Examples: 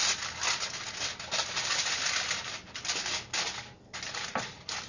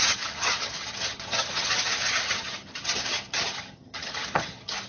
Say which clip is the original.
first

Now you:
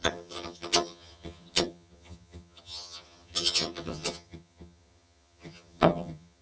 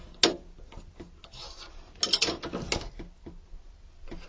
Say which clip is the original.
second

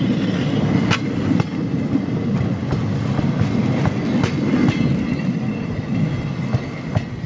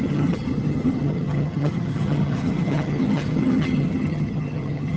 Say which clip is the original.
first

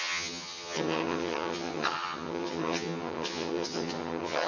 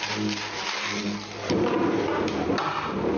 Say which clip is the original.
second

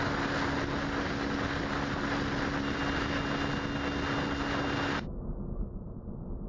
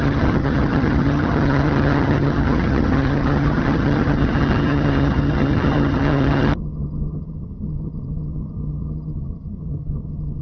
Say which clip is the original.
first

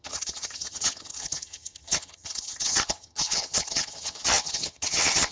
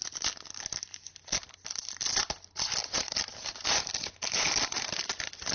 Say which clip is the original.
second